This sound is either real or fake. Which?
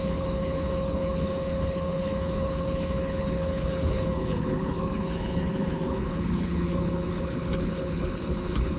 fake